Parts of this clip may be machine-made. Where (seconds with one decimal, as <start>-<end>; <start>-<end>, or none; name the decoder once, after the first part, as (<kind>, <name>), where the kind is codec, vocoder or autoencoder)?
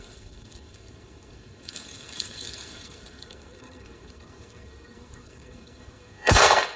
0.0-6.8 (codec, SNAC)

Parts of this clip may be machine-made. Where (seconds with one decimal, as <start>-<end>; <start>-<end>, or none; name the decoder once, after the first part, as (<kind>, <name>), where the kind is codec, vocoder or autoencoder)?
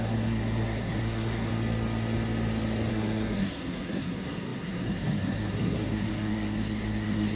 0.0-1.5 (codec, SNAC); 2.9-7.3